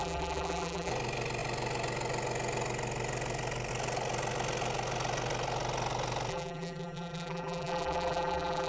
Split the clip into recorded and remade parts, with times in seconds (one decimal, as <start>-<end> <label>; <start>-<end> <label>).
0.0-0.9 remade; 0.9-6.3 recorded; 6.3-8.7 remade